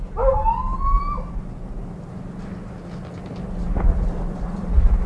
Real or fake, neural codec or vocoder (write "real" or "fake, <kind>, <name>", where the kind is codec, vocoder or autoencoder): real